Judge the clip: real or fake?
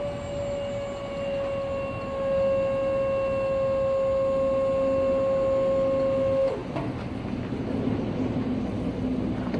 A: real